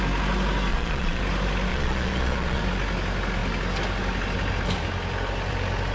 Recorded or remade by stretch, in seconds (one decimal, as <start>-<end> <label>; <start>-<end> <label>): 0.0-0.7 recorded; 0.7-1.2 remade; 1.2-1.7 recorded; 1.7-2.6 remade; 2.6-5.9 recorded